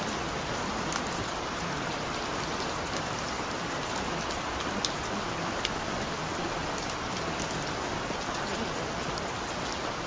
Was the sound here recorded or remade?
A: recorded